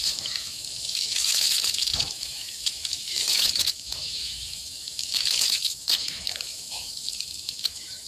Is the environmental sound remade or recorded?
remade